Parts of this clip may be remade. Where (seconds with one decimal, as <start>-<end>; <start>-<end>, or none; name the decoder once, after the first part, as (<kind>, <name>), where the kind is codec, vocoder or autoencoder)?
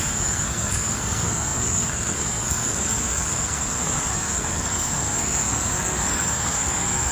0.0-7.1 (codec, SNAC)